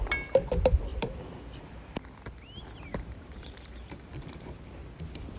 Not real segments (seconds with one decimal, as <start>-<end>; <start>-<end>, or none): 2.9-4.6